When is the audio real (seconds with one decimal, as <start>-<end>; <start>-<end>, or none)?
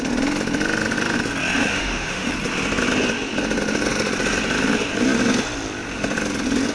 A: 0.0-1.6; 2.3-6.7